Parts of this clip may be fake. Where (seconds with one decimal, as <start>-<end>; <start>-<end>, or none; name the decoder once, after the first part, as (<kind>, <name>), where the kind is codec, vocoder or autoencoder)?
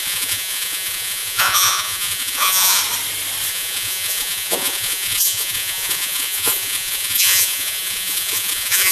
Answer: 0.0-2.8 (vocoder, Vocos); 3.5-8.9